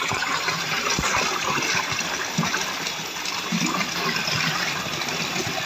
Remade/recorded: recorded